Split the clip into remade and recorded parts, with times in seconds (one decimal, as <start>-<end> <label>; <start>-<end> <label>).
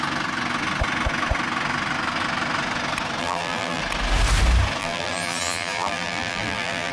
0.0-3.2 recorded; 3.2-3.8 remade; 3.8-4.8 recorded; 4.8-6.9 remade